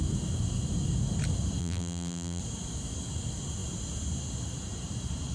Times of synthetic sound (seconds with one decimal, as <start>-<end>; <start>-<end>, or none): 1.6-2.4